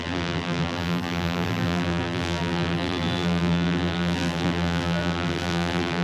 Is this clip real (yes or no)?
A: no